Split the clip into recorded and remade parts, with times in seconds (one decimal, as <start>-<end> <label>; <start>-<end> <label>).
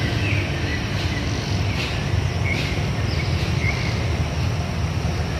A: 0.0-0.7 recorded; 0.7-2.2 remade; 2.2-5.4 recorded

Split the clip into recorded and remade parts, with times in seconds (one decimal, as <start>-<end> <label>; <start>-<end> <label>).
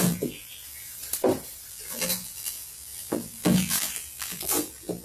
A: 0.0-1.0 remade; 1.0-1.7 recorded; 1.7-5.0 remade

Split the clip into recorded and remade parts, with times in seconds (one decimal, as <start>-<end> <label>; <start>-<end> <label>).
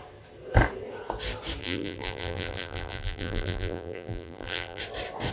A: 0.0-1.6 recorded; 1.6-4.8 remade; 4.8-5.3 recorded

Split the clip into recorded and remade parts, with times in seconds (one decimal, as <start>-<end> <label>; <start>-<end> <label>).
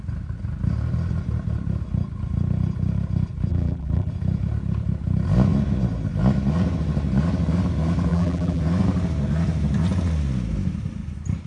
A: 0.0-3.5 recorded; 3.5-4.1 remade; 4.1-8.1 recorded; 8.1-8.6 remade; 8.6-11.5 recorded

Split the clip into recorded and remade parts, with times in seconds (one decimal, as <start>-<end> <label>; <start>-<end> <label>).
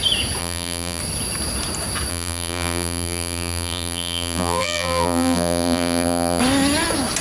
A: 0.0-0.4 recorded; 0.4-1.0 remade; 1.0-2.1 recorded; 2.1-6.4 remade; 6.4-7.2 recorded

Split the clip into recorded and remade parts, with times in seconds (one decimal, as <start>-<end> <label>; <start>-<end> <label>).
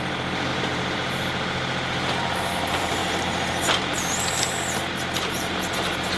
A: 0.0-3.0 remade; 3.0-6.2 recorded